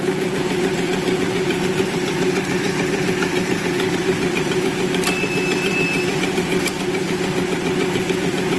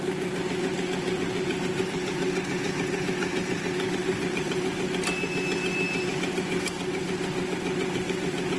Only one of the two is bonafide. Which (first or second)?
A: second